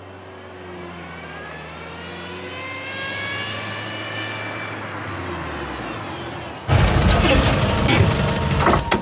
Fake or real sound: real